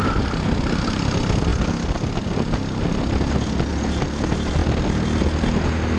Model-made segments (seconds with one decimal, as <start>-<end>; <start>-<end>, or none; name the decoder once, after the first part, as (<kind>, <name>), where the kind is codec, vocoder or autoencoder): none